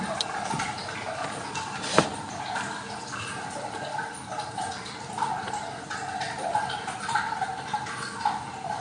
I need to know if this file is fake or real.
real